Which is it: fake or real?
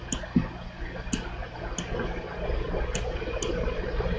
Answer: real